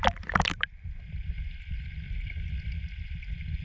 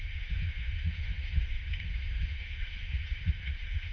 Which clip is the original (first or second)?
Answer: first